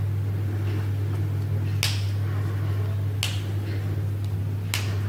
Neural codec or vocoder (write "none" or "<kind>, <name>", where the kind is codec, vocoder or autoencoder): none